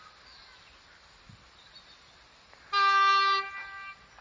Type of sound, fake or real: real